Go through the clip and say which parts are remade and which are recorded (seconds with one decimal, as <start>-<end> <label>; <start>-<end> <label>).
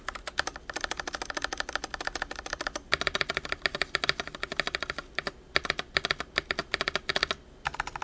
0.0-8.0 recorded